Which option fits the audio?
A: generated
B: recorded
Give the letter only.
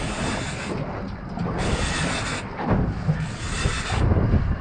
B